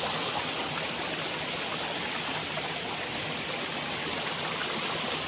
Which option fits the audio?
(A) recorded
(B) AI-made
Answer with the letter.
A